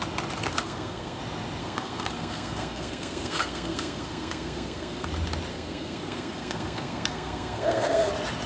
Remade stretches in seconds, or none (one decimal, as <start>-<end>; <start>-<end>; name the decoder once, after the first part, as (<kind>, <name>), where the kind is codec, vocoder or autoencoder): 0.6-1.2 (codec, SNAC); 1.6-5.1; 5.5-8.1